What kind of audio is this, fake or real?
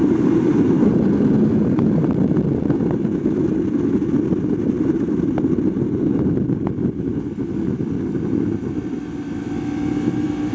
real